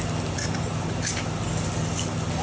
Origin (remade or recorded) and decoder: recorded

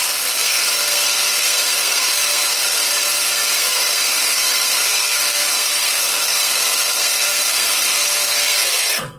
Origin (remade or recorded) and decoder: remade, codec, SNAC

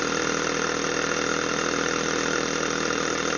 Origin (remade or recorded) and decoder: recorded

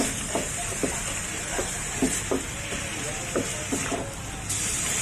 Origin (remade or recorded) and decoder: recorded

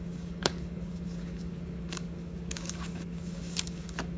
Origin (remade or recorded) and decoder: remade, codec, DAC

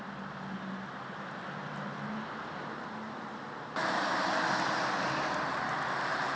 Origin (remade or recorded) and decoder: recorded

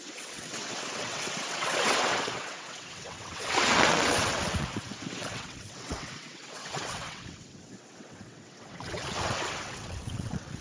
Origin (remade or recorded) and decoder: remade, vocoder, WaveNeXt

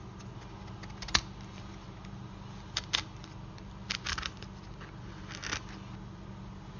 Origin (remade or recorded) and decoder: recorded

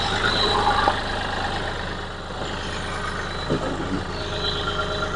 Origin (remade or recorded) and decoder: recorded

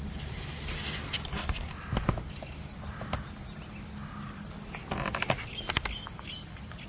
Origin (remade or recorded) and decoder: recorded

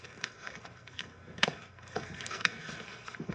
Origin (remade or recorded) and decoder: remade, codec, SNAC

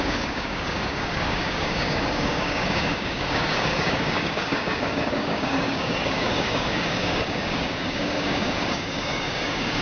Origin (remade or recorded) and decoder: remade, codec, DAC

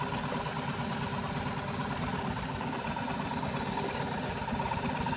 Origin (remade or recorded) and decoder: recorded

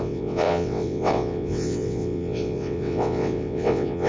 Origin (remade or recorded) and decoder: remade, vocoder, WaveNeXt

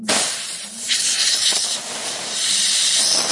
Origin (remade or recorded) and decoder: remade, vocoder, BigVGAN v2